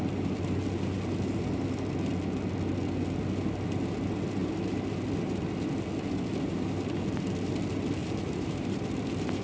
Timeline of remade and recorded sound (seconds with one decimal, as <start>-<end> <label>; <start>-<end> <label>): 0.0-8.0 recorded; 8.0-8.8 remade; 8.8-9.4 recorded